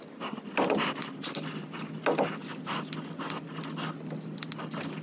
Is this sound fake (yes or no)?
no